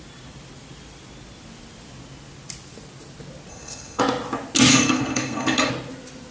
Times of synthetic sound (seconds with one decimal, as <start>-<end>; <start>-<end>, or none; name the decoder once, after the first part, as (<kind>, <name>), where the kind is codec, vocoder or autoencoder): 3.5-4.0 (codec, SNAC); 4.7-5.7